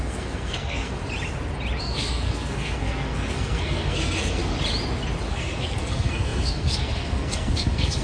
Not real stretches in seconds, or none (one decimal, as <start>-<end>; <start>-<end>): 0.0-1.0; 1.8-4.4; 5.3-8.0